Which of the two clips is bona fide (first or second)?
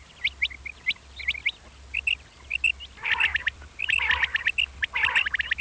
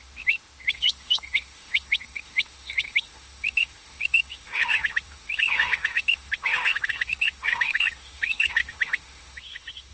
first